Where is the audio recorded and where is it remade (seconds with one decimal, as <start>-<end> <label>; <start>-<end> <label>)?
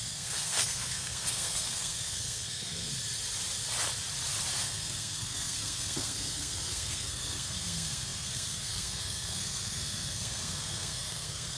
0.0-2.9 remade; 2.9-4.6 recorded; 4.6-11.6 remade